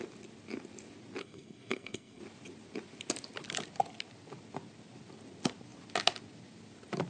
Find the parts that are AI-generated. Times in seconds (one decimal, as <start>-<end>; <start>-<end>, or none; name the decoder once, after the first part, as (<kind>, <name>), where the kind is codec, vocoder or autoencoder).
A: 1.2-2.2 (codec, SNAC)

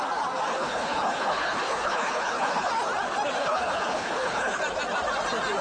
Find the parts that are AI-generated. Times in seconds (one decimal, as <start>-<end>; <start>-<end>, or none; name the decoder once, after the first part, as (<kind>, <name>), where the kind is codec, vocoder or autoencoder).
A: 0.5-2.7 (codec, HILCodec); 3.4-4.6

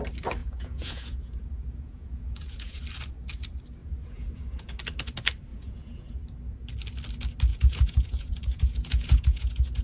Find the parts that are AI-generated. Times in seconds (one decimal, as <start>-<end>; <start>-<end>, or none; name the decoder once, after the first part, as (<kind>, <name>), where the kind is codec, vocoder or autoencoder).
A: 0.4-2.8 (vocoder, Vocos); 3.8-4.7; 5.5-6.1; 7.5-9.8

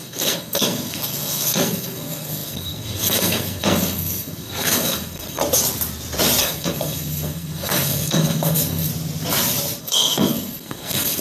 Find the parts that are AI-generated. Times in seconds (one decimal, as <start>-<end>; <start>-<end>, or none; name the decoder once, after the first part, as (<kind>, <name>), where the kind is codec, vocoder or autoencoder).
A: 0.0-5.4 (codec, SNAC); 6.4-8.9; 9.8-11.2

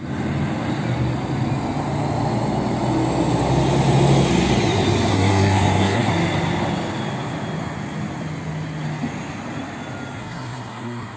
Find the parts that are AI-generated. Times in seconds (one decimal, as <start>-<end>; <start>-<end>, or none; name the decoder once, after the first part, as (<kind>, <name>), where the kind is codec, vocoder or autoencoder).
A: 5.1-6.1 (codec, SNAC); 10.2-11.2

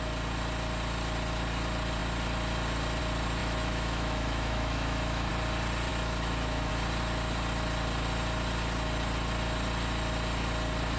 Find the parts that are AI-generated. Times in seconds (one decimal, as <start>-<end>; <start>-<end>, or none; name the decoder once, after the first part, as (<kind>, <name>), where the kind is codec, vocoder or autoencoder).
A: 3.4-5.3 (autoencoder, DAC-VAE); 5.9-6.7

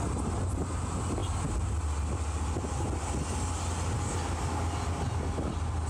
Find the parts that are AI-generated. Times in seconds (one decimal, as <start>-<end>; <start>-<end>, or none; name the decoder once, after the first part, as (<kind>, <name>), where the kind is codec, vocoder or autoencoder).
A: none

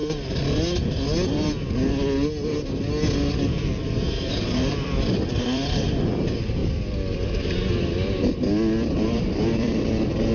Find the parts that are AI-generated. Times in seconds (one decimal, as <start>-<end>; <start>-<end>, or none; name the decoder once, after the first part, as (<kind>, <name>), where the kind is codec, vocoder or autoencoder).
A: 3.3-10.3 (vocoder, BigVGAN v2)